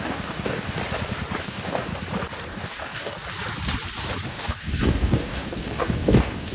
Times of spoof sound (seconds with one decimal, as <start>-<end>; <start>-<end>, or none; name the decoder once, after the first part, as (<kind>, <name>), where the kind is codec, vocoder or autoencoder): 0.0-0.8 (codec, DAC); 1.4-1.9; 2.5-3.1; 4.3-6.5